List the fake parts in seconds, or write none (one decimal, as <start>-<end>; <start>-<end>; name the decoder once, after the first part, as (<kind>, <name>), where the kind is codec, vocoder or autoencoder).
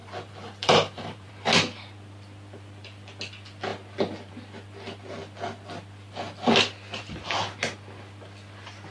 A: 0.0-1.3 (vocoder, BigVGAN v2)